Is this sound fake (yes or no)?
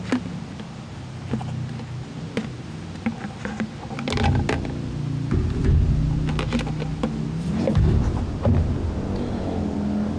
no